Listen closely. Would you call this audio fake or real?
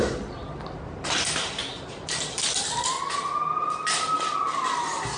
real